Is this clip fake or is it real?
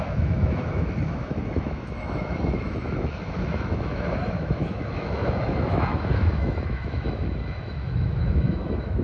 fake